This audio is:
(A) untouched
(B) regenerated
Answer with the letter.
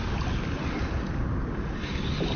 A